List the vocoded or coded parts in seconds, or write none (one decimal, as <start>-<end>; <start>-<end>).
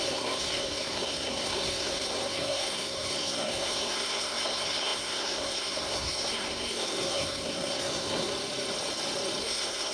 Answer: 0.0-8.3; 9.4-9.9